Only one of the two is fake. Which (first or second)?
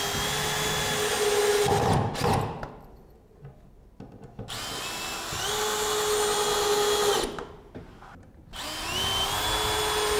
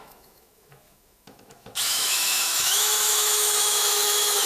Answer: second